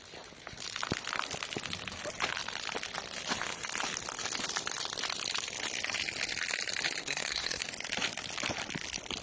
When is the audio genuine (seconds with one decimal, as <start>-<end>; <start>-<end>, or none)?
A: 0.0-7.0; 7.6-9.2